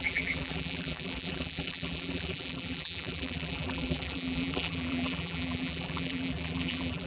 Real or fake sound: fake